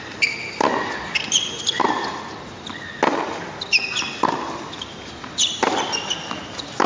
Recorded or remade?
recorded